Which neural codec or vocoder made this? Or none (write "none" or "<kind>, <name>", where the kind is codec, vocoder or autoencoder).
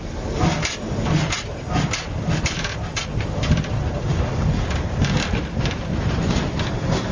none